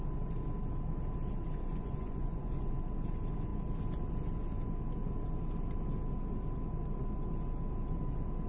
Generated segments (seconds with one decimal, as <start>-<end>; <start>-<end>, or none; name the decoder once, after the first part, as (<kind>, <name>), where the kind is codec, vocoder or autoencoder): 1.7-2.8 (vocoder, Vocos)